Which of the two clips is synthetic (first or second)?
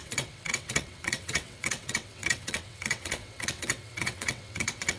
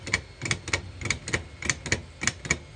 first